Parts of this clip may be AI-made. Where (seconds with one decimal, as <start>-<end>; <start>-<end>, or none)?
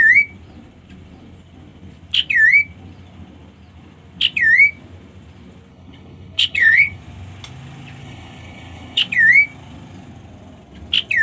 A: 5.7-7.0; 8.0-9.0